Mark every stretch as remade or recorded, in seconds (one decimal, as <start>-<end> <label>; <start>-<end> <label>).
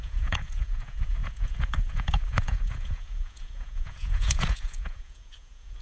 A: 0.0-5.8 remade